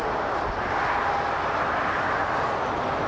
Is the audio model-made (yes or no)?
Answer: no